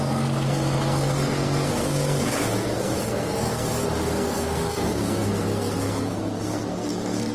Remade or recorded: remade